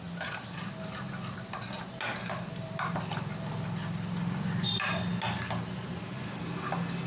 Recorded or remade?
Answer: recorded